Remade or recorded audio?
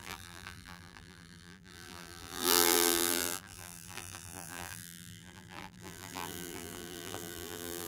remade